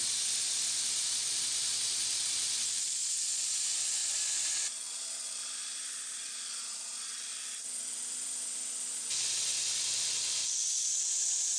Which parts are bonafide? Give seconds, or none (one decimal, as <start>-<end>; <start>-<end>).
0.0-11.6